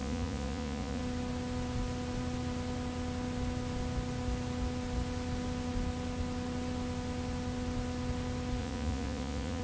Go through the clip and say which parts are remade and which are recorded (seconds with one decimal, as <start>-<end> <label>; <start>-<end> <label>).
0.0-1.0 remade; 1.0-8.6 recorded; 8.6-9.6 remade